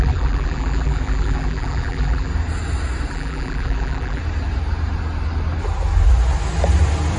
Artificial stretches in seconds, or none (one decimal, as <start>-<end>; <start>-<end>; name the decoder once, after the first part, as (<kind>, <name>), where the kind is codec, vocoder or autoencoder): 0.0-2.3 (vocoder, BigVGAN v2); 3.1-4.2